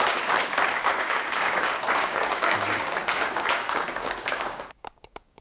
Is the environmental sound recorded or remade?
remade